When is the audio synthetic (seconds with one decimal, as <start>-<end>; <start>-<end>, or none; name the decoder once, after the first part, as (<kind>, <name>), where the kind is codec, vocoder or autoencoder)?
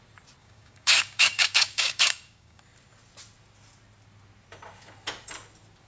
0.4-2.6 (codec, DAC)